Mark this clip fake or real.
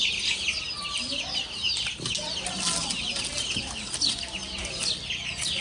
real